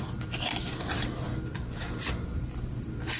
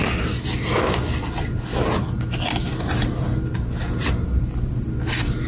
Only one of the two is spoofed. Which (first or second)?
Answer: first